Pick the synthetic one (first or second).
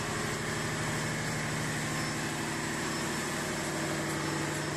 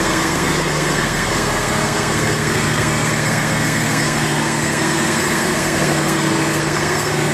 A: second